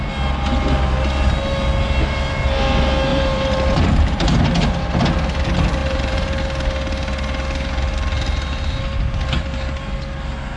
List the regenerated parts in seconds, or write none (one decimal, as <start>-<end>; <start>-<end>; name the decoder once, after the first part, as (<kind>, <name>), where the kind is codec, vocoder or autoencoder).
3.1-4.4 (vocoder, BigVGAN v2); 5.8-6.4

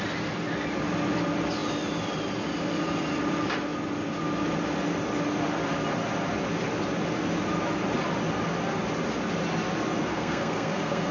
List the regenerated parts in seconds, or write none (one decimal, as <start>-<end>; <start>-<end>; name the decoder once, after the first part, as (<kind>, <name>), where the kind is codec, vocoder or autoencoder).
10.1-11.1 (codec, SNAC)

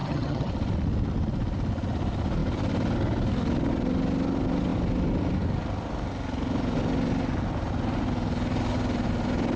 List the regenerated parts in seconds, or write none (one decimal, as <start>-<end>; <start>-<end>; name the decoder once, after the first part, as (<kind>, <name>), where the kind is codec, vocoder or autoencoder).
0.0-0.5 (vocoder, HiFi-GAN)

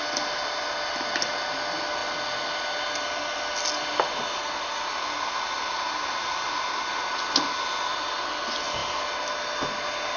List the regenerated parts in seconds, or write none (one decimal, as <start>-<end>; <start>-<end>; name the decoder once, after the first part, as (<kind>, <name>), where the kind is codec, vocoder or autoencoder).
none

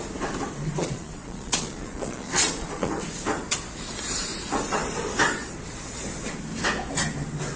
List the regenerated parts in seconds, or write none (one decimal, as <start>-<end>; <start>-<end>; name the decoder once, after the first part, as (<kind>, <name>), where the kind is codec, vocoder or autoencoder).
0.8-2.9 (vocoder, Vocos)

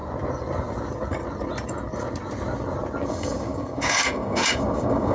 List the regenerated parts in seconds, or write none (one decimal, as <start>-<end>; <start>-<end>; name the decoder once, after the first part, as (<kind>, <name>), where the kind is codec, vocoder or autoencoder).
3.1-5.1 (codec, DAC)

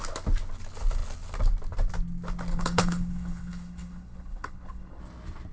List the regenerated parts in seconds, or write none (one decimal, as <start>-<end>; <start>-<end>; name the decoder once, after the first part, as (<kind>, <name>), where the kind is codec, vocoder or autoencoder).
2.5-5.0 (codec, HILCodec)